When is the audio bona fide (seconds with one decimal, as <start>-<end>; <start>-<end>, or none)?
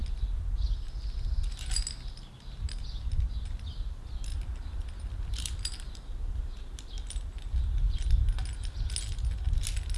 0.6-4.3; 6.4-10.0